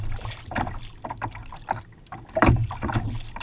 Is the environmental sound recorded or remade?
recorded